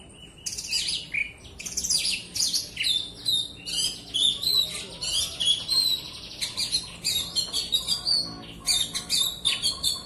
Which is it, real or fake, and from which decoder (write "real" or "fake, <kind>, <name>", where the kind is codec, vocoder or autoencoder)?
real